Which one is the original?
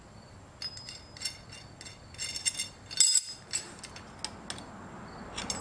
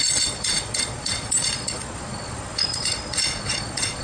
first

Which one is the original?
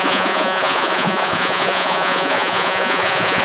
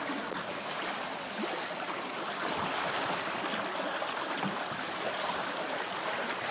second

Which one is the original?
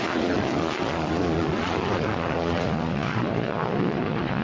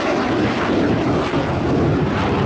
second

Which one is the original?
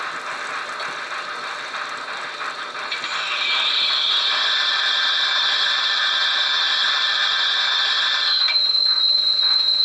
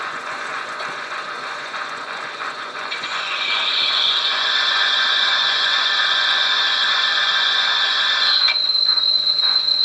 first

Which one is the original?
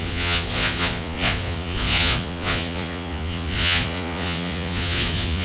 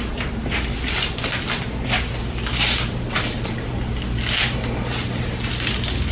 second